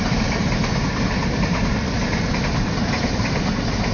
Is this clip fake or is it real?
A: real